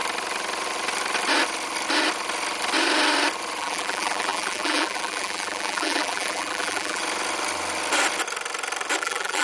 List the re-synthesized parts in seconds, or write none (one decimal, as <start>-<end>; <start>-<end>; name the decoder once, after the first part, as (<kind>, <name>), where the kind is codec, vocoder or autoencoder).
3.6-7.0 (vocoder, BigVGAN v2); 9.0-9.4